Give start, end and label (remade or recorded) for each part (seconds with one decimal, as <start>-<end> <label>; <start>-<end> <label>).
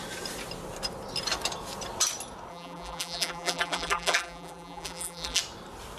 0.0-2.5 recorded; 2.5-5.4 remade; 5.4-6.0 recorded